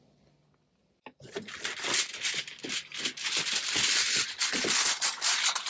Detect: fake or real real